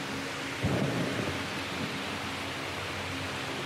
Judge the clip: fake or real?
real